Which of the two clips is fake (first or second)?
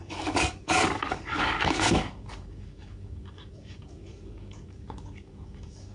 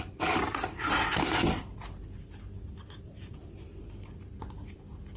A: first